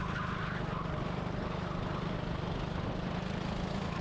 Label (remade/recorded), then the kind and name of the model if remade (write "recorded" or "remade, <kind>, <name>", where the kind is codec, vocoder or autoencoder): recorded